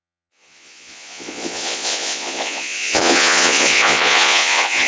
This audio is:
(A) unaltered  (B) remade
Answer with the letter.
B